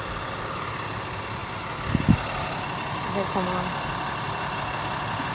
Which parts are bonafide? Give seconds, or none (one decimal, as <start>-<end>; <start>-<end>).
0.0-5.3